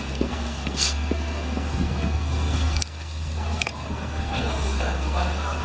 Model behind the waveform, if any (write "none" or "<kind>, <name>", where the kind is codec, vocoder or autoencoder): codec, SNAC